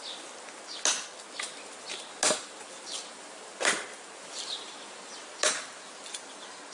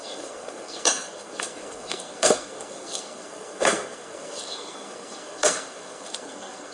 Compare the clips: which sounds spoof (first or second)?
second